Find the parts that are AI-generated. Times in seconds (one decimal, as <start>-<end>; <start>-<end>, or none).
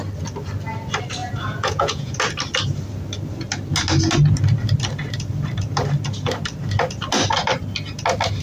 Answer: 1.2-2.1